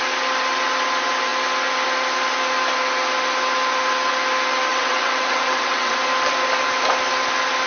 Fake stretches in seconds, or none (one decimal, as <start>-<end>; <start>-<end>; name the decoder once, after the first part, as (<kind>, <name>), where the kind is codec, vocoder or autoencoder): 4.7-5.9 (vocoder, WaveNeXt)